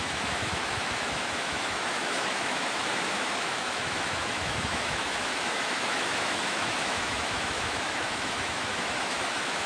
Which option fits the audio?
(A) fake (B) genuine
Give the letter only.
A